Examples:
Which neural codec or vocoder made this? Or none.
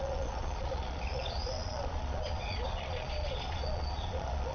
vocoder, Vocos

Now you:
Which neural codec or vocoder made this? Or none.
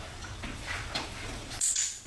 vocoder, Vocos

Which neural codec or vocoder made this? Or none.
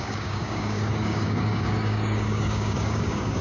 codec, DAC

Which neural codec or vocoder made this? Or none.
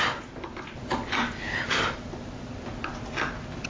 none